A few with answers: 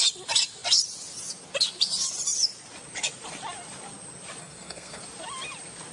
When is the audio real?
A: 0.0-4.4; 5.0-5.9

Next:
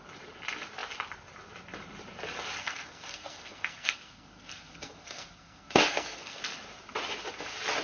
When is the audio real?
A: 0.0-2.6; 6.4-7.8

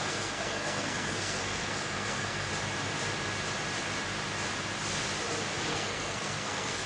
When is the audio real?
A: 2.5-5.7